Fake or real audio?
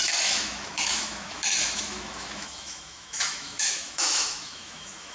fake